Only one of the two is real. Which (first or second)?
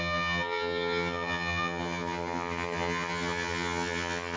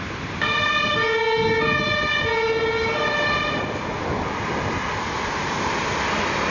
second